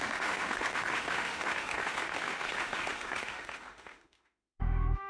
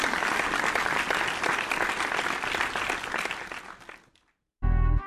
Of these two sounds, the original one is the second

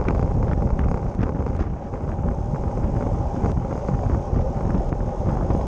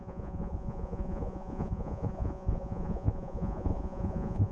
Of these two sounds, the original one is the first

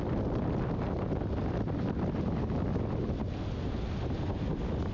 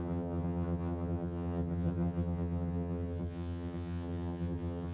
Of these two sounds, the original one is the first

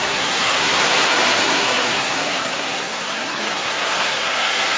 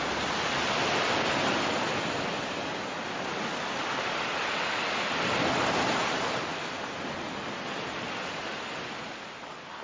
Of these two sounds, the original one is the second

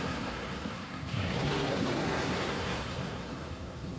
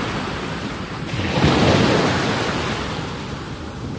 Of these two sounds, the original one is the second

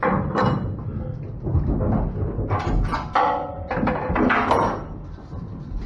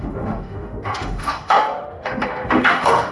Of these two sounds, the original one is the first